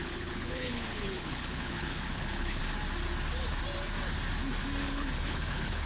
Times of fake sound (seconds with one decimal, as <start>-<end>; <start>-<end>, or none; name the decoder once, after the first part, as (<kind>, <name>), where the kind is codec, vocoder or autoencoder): 0.0-2.6 (codec, HILCodec); 4.8-5.9

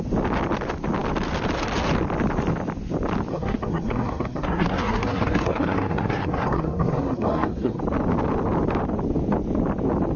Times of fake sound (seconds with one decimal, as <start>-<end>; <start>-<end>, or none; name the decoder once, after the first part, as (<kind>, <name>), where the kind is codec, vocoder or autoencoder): 3.3-7.8 (codec, SNAC)

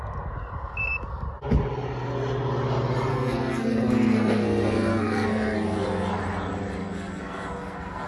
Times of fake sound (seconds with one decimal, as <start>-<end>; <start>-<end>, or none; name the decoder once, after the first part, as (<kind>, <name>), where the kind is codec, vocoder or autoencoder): 3.1-6.2 (codec, SNAC); 6.8-8.1

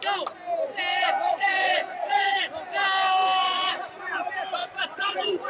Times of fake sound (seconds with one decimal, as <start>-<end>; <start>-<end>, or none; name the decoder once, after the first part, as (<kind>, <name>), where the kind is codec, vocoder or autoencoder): 0.9-2.5 (vocoder, Vocos); 3.4-4.0; 4.6-5.5